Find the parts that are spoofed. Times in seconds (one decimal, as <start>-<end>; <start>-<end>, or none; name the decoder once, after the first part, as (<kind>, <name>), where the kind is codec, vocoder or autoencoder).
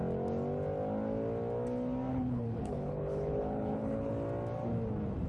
2.1-4.1 (codec, HILCodec)